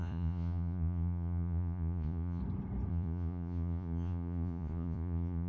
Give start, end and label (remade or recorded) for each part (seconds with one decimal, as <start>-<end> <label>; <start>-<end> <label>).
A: 0.0-2.4 remade; 2.4-2.9 recorded; 2.9-5.5 remade